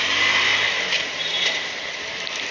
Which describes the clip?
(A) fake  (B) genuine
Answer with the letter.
B